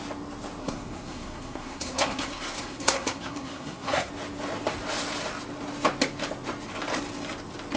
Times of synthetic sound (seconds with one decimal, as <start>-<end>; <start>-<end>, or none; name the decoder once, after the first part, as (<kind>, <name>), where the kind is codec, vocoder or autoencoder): 0.6-4.1 (codec, SNAC)